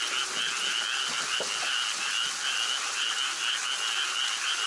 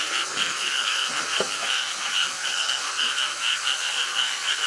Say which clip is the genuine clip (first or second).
first